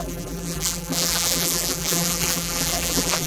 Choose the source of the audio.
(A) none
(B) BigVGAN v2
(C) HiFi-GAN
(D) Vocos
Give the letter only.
B